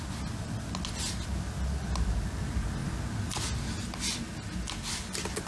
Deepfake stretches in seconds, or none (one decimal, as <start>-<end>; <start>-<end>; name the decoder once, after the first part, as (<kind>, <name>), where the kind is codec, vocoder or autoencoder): none